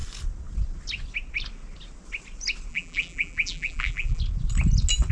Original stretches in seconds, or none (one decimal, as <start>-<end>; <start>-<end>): 0.0-2.7; 4.2-5.1

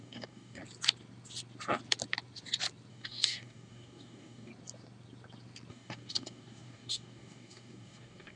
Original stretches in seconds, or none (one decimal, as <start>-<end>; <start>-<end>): 0.6-2.9; 4.5-5.7

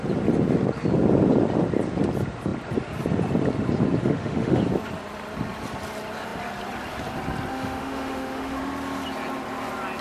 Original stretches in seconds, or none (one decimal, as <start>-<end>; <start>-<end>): 0.0-4.0; 4.6-7.5; 8.6-10.0

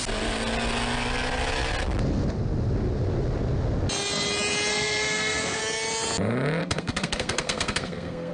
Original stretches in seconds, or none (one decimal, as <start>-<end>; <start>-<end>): 0.0-4.7; 5.6-6.6

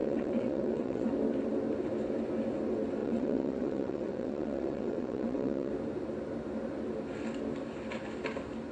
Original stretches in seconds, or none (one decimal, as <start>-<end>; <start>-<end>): 1.1-3.0; 5.7-8.7